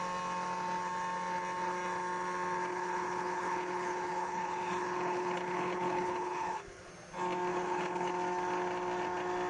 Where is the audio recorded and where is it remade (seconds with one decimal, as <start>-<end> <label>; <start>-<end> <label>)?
0.0-2.7 recorded; 2.7-6.9 remade; 6.9-7.5 recorded; 7.5-8.1 remade; 8.1-9.5 recorded